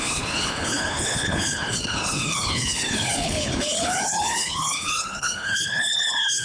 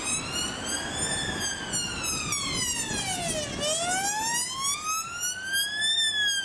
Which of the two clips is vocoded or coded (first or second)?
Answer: first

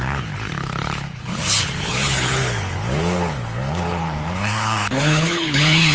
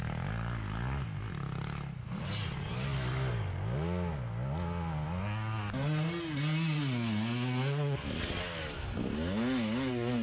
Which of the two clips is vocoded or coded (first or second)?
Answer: first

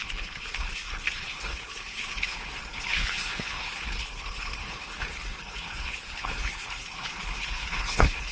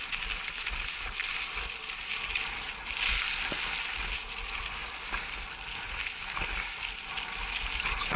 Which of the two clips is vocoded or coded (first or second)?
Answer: first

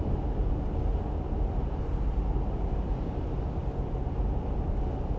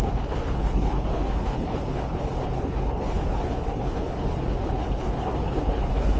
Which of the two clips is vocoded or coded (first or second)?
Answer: second